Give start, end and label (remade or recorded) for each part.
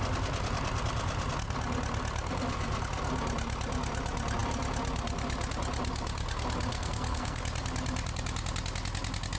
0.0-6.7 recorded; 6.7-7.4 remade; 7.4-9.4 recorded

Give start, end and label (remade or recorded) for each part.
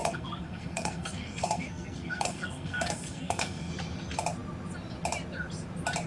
0.0-3.7 remade; 3.7-6.1 recorded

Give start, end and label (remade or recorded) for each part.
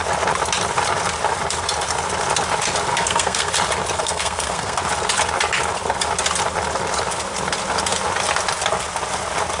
0.0-2.9 recorded; 2.9-3.5 remade; 3.5-4.0 recorded; 4.0-4.8 remade; 4.8-9.6 recorded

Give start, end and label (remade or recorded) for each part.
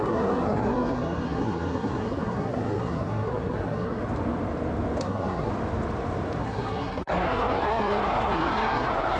0.0-4.0 remade; 4.0-5.0 recorded; 5.0-5.5 remade; 5.5-6.4 recorded; 6.4-9.2 remade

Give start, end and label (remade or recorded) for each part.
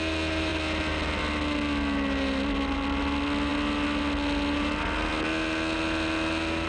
0.0-6.7 recorded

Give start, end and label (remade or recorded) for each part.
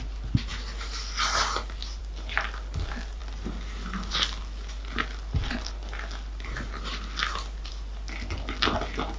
0.0-9.2 recorded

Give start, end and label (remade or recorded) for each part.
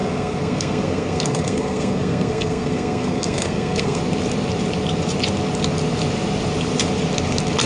0.0-4.0 remade; 4.0-7.7 recorded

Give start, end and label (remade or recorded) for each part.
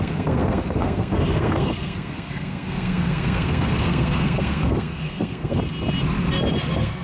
0.0-5.6 remade; 5.6-6.6 recorded; 6.6-7.0 remade